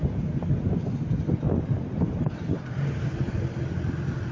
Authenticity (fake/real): real